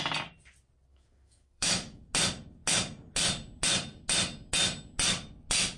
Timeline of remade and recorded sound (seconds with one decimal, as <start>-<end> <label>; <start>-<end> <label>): 0.0-0.9 recorded; 0.9-2.0 remade; 2.0-5.8 recorded